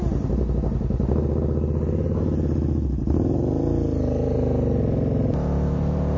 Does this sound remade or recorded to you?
remade